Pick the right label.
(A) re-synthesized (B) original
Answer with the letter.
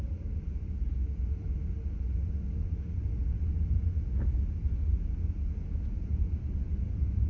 B